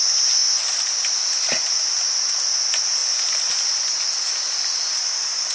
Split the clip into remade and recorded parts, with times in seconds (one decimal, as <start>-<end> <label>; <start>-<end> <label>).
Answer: 0.0-5.5 recorded